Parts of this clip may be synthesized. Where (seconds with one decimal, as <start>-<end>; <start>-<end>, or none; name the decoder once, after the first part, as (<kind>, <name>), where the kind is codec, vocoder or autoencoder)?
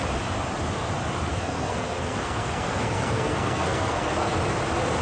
1.3-4.3 (codec, SNAC)